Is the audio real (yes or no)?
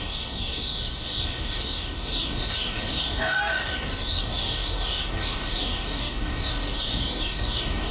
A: no